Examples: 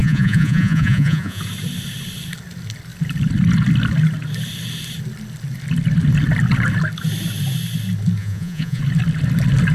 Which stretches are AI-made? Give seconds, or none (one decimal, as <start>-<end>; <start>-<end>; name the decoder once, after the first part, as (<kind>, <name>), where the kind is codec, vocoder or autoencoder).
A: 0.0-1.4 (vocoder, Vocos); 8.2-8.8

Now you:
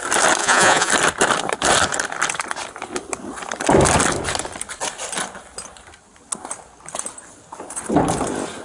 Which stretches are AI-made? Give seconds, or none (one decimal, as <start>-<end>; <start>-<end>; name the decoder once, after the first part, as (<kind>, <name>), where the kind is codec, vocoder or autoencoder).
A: 0.4-0.9 (vocoder, Vocos)

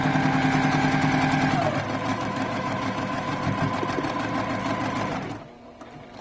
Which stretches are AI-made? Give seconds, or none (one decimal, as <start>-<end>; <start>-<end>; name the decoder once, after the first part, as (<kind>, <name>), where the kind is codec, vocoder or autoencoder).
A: 2.1-3.3 (autoencoder, DAC-VAE)

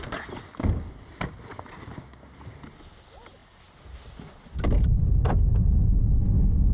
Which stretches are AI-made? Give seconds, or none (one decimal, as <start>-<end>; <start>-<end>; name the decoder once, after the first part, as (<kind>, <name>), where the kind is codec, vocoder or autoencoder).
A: none

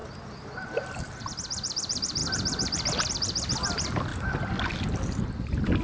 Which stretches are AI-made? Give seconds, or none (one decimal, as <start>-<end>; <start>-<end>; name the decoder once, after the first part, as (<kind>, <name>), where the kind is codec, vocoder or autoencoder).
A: none

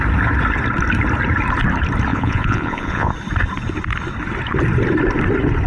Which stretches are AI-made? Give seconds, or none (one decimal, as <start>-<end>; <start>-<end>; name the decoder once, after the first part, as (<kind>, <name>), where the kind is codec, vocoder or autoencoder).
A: 2.1-3.1 (vocoder, Vocos)

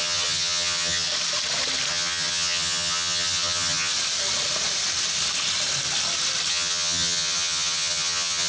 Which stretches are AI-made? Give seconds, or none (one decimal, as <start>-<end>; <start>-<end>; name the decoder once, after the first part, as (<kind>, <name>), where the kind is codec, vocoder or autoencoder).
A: 0.0-1.1 (vocoder, HiFi-GAN); 1.9-3.9; 6.5-8.5

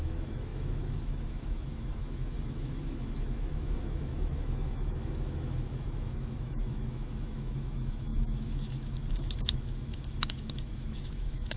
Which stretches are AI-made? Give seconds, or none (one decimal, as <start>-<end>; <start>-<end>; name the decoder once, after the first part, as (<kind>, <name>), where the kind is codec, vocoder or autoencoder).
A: 0.0-11.6 (autoencoder, DAC-VAE)